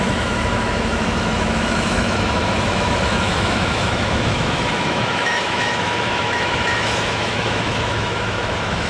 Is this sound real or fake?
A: fake